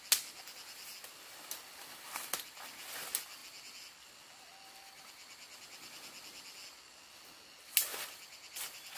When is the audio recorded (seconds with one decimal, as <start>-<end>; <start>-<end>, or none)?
0.0-9.0